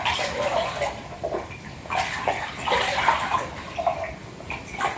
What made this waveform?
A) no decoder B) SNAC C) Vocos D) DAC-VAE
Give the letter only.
A